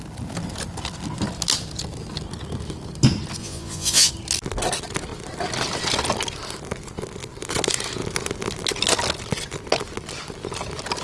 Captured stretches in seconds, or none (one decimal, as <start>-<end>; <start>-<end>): 0.0-3.4; 4.1-11.0